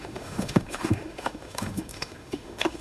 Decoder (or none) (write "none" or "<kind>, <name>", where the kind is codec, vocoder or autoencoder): autoencoder, DAC-VAE